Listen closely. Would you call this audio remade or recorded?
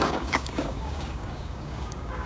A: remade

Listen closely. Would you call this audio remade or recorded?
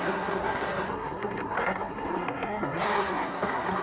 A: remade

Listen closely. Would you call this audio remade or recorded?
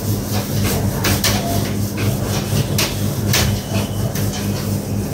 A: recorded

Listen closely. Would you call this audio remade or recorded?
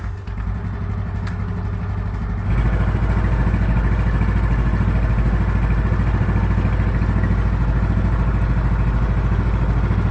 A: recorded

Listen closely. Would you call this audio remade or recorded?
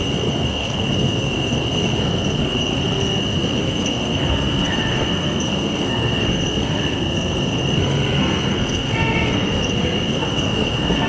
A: remade